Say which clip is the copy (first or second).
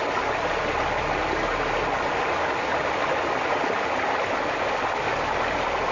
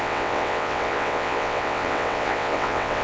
second